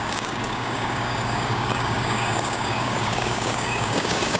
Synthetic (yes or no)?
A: yes